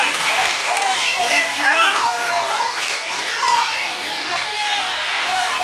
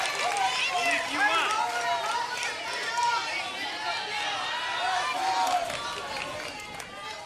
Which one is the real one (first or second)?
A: second